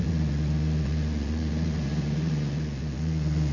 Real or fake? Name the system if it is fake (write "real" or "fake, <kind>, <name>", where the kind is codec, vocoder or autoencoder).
fake, vocoder, Vocos